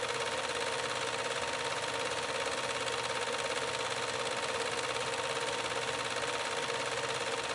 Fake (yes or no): no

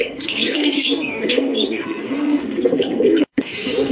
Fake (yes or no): yes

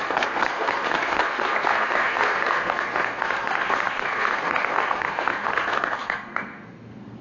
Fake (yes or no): yes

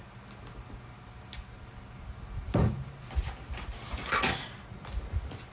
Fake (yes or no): no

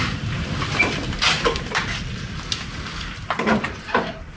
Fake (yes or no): yes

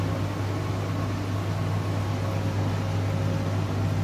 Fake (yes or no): no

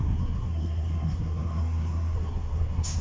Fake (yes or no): yes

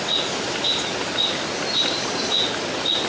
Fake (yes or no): no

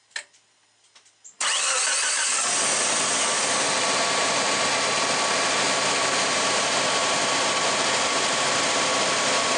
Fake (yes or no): no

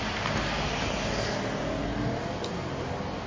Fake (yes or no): no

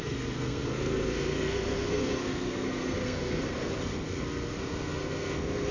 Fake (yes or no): yes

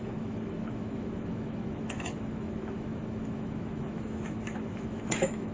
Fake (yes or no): yes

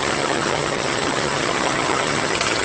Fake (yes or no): yes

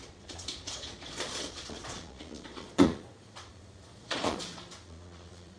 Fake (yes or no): yes